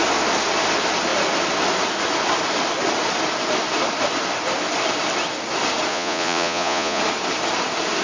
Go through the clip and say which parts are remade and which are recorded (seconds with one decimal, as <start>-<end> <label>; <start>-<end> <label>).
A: 0.0-5.9 recorded; 5.9-7.0 remade; 7.0-8.0 recorded